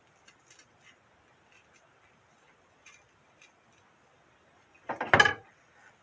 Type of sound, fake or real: real